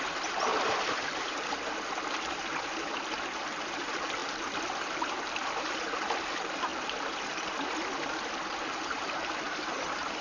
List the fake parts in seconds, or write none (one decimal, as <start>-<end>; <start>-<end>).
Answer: 0.0-0.5; 3.4-4.2; 5.6-10.2